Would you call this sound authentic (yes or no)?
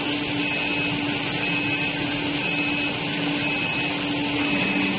yes